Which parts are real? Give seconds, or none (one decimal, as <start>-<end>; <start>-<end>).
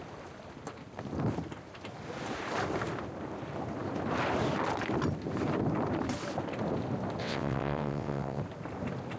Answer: 0.0-7.2; 8.4-9.2